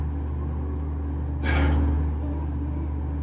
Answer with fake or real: real